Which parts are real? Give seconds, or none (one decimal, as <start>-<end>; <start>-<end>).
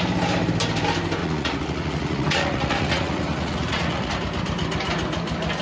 0.0-1.2; 4.1-5.6